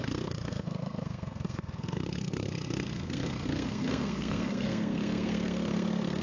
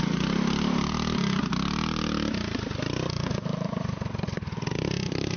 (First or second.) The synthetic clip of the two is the first